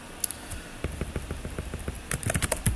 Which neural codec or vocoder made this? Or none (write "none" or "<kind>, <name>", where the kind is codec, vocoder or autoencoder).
none